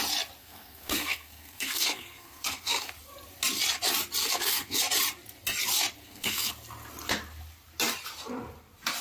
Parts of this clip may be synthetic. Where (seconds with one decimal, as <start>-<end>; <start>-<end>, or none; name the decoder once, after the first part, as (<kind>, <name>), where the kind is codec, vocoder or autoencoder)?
0.4-2.9 (codec, SNAC); 4.2-4.8; 6.0-6.5